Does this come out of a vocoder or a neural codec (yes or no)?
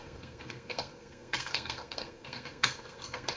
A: yes